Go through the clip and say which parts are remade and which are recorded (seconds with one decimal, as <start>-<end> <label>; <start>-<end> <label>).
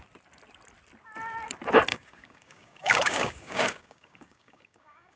0.0-1.9 recorded; 1.9-5.2 remade